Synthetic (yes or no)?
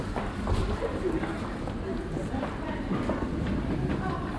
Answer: no